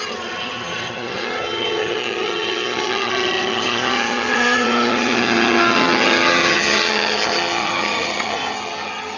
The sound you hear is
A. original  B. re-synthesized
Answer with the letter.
B